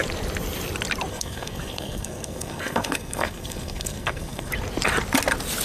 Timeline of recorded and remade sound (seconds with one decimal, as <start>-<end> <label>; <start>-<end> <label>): 0.0-1.1 recorded; 1.1-4.5 remade; 4.5-5.6 recorded